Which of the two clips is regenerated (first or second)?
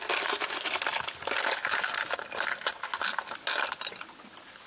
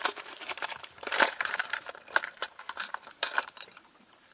second